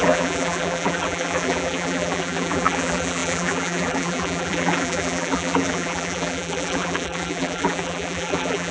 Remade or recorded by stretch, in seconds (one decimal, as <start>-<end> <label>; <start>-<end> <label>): 0.0-8.7 remade